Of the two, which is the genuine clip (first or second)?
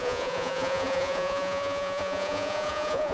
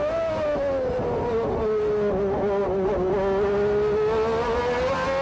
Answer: second